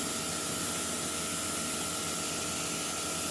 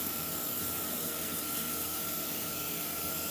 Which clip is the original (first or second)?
first